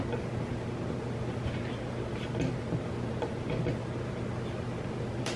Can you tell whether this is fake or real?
real